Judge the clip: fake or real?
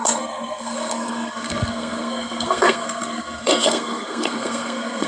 fake